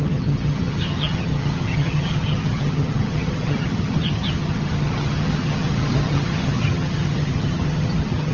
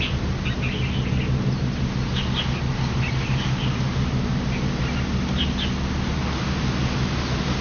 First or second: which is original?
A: second